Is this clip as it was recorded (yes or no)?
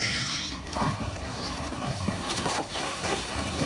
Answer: no